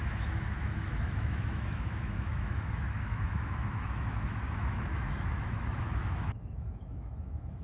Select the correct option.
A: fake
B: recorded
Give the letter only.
A